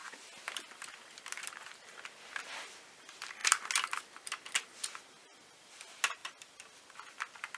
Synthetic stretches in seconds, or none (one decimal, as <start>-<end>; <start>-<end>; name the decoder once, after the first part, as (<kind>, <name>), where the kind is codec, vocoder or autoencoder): none